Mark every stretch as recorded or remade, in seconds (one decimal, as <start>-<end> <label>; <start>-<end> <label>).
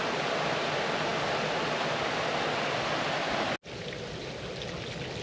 0.0-5.2 recorded